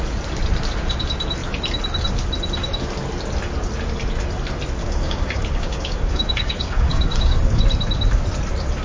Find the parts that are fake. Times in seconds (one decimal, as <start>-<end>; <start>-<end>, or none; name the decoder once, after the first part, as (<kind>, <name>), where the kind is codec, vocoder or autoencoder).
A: 4.8-7.6 (codec, DAC)